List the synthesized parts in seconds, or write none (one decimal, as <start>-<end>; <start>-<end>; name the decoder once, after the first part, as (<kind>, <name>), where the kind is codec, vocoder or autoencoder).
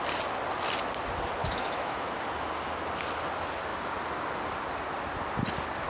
1.4-2.1 (autoencoder, DAC-VAE)